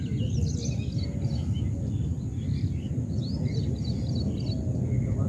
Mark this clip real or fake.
real